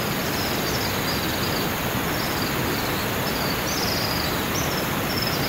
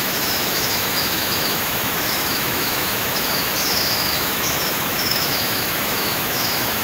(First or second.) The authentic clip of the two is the first